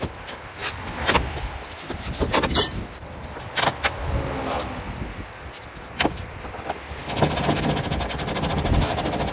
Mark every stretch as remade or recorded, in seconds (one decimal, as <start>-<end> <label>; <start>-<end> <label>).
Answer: 0.0-9.3 recorded